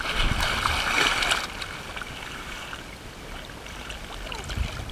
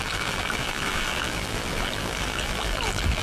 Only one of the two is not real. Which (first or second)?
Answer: second